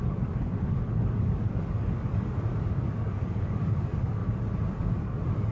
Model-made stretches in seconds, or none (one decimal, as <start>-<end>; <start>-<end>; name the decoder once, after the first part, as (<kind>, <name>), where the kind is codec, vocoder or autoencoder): 0.0-4.2 (codec, DAC); 4.7-5.5